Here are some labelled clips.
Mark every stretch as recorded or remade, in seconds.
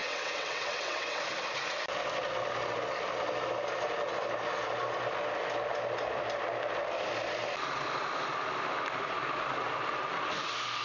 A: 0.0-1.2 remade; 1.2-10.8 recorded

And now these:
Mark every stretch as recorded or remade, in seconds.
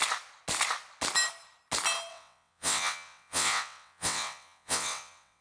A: 0.0-2.1 recorded; 2.1-5.4 remade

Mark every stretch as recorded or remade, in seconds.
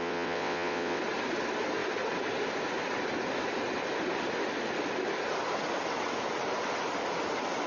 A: 0.0-1.0 remade; 1.0-7.7 recorded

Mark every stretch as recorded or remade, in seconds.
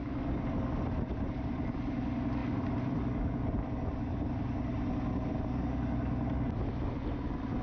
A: 0.0-7.6 recorded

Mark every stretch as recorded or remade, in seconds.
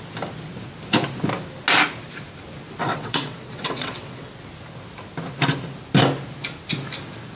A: 0.0-2.9 recorded; 2.9-4.3 remade; 4.3-7.4 recorded